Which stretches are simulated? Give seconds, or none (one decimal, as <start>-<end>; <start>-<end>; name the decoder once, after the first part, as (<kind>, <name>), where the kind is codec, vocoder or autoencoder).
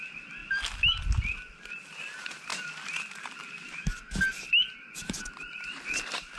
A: none